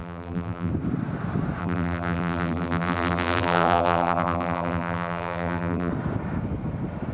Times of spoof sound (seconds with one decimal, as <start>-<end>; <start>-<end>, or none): 0.0-0.7; 1.6-5.9